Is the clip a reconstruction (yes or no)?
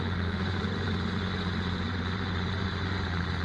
yes